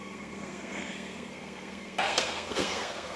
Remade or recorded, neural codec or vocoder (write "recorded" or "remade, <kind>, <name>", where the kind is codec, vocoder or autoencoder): remade, codec, SNAC